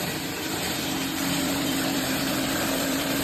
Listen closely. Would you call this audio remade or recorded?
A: remade